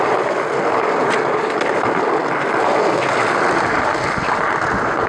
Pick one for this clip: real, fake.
real